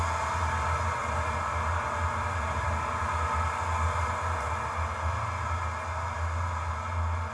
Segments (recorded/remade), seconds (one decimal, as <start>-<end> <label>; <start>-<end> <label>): 0.0-7.3 recorded